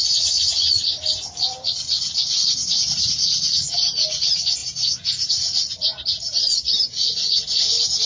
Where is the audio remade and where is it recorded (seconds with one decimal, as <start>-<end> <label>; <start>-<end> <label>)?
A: 0.0-8.1 recorded